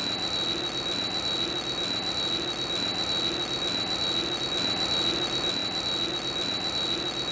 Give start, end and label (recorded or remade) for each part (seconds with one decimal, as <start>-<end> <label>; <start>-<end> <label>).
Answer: 0.0-7.3 recorded